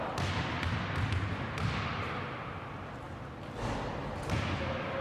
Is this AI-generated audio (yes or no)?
no